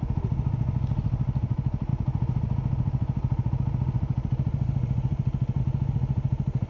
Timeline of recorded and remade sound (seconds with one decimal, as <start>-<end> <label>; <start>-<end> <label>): 0.0-6.7 recorded